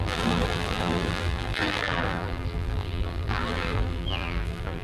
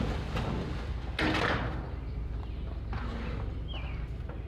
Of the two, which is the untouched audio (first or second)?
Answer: second